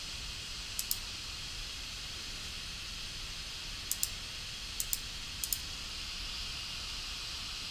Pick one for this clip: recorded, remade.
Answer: recorded